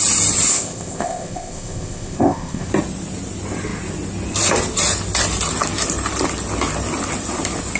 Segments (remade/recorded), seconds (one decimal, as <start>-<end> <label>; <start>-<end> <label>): 0.0-0.5 recorded; 0.5-2.7 remade; 2.7-7.8 recorded

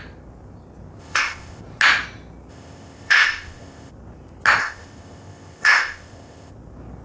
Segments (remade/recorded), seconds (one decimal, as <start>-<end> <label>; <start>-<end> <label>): 0.0-1.0 recorded; 1.0-1.6 remade; 1.6-2.5 recorded; 2.5-3.9 remade; 3.9-4.6 recorded; 4.6-6.5 remade; 6.5-7.0 recorded

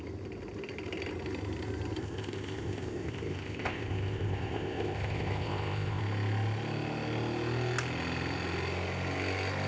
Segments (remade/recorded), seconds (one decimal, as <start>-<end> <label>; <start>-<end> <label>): 0.0-2.0 recorded; 2.0-6.0 remade; 6.0-9.7 recorded

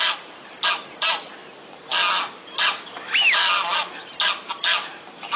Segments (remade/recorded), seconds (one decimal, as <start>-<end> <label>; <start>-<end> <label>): 0.0-5.4 recorded

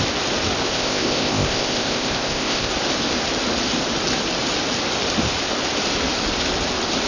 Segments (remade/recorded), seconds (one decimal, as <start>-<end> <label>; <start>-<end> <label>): 0.0-0.6 recorded; 0.6-2.7 remade; 2.7-7.1 recorded

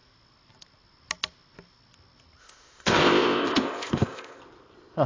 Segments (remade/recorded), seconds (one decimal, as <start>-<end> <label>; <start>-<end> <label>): 0.0-2.4 recorded; 2.4-4.4 remade; 4.4-5.1 recorded

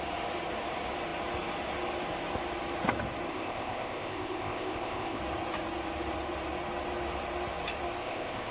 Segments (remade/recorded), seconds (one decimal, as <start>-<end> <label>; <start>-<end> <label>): 0.0-3.3 recorded; 3.3-5.2 remade; 5.2-8.0 recorded; 8.0-8.5 remade